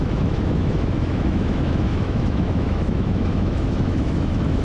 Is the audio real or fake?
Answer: fake